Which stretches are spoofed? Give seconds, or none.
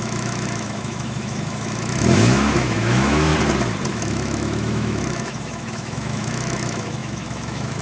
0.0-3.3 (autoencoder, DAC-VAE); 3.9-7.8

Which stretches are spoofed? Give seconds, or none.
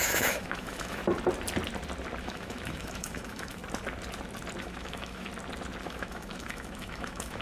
0.0-1.0 (autoencoder, DAC-VAE); 2.2-3.6; 4.6-5.3; 5.8-7.4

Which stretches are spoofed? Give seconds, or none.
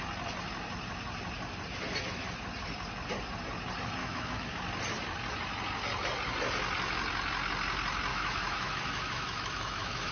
4.0-4.5 (autoencoder, DAC-VAE); 8.1-10.1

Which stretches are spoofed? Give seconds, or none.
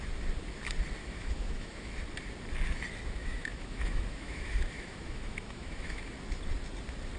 1.0-1.9 (autoencoder, DAC-VAE); 3.2-6.1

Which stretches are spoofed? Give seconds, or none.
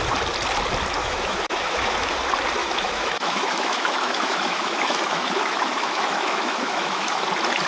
1.0-2.2 (autoencoder, DAC-VAE); 2.6-7.2